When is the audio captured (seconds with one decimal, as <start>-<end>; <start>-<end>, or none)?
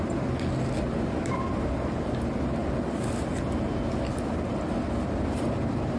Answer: 0.0-6.0